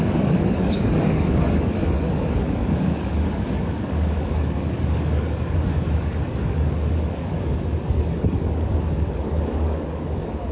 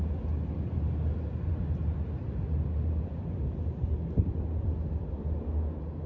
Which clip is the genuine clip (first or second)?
second